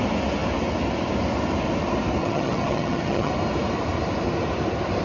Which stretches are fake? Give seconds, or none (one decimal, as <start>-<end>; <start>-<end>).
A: 2.2-3.3